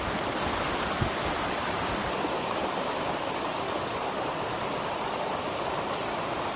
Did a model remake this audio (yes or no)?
yes